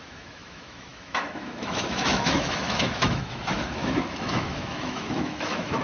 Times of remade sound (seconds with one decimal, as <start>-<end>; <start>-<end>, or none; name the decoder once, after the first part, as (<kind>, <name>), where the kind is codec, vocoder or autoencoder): 0.0-5.8 (autoencoder, DAC-VAE)